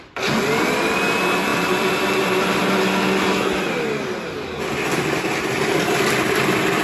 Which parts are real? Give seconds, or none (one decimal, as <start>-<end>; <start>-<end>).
0.0-1.5; 2.5-6.8